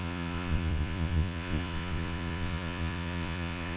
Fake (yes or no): yes